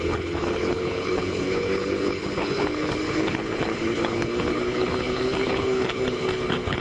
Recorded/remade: remade